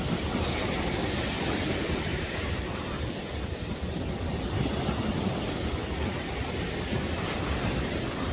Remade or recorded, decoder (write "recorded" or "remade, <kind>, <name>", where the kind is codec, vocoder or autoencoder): recorded